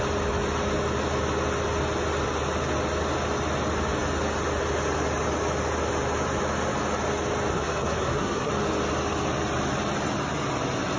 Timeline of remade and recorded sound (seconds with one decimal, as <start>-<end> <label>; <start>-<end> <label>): 0.0-7.5 recorded; 7.5-8.5 remade; 8.5-11.0 recorded